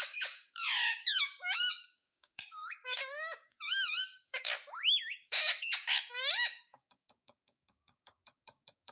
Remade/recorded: remade